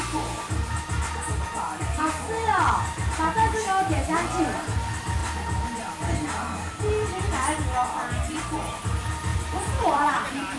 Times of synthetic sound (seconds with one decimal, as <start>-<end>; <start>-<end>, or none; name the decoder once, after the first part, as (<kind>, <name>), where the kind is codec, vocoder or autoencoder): 9.3-10.1 (vocoder, BigVGAN v2)